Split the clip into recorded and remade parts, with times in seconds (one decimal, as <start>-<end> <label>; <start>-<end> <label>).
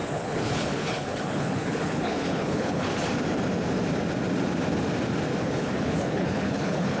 0.0-2.9 remade; 2.9-5.4 recorded; 5.4-7.0 remade